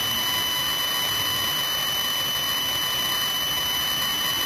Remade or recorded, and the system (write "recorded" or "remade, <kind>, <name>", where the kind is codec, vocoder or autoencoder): recorded